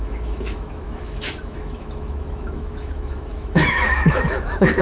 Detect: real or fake fake